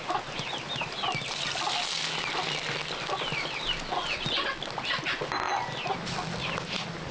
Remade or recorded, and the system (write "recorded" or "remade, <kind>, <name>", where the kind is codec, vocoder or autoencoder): recorded